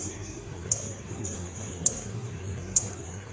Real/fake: fake